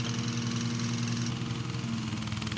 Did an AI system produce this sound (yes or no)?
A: no